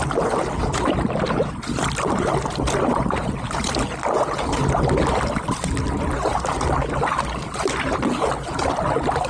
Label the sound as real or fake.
real